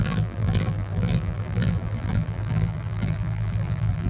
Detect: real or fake fake